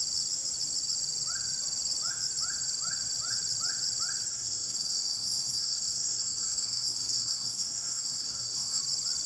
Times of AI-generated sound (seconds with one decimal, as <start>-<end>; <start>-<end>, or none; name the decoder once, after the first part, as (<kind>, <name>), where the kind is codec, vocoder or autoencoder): 4.3-8.8 (codec, SNAC)